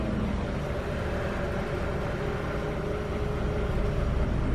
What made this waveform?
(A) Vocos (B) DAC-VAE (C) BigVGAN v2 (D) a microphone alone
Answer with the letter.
D